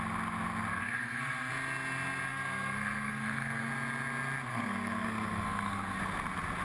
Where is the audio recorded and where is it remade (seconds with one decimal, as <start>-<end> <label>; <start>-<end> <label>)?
0.0-0.7 recorded; 0.7-1.5 remade; 1.5-2.3 recorded; 2.3-3.7 remade; 3.7-4.5 recorded; 4.5-6.0 remade; 6.0-6.6 recorded